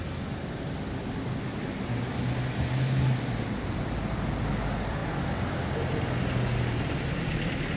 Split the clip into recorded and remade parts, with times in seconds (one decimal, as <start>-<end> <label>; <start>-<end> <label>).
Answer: 0.0-7.8 recorded